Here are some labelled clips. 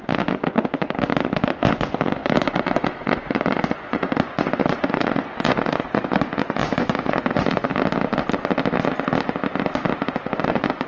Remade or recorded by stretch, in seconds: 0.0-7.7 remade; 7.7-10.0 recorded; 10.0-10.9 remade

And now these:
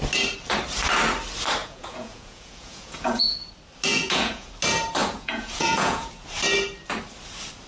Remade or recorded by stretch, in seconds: 0.0-1.6 recorded; 1.6-3.5 remade; 3.5-3.9 recorded; 3.9-4.5 remade; 4.5-5.0 recorded; 5.0-6.1 remade; 6.1-7.7 recorded

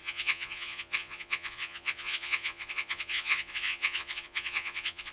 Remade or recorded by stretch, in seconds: 0.0-5.1 remade